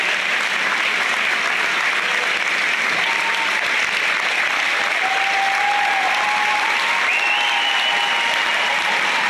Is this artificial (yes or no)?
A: no